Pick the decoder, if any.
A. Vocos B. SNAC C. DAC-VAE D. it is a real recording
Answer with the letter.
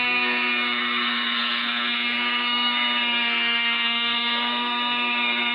B